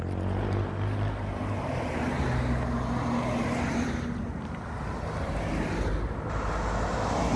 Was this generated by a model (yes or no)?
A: no